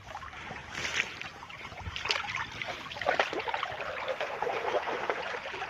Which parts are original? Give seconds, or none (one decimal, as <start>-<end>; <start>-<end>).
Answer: 0.0-4.1; 5.2-5.7